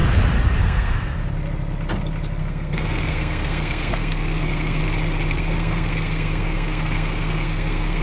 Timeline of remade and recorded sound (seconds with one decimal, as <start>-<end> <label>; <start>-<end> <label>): 0.0-0.6 recorded; 0.6-1.2 remade; 1.2-2.4 recorded; 2.4-4.8 remade; 4.8-5.4 recorded; 5.4-8.0 remade